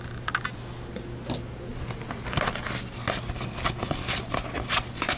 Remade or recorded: recorded